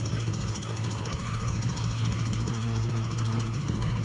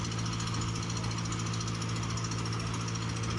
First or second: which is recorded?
second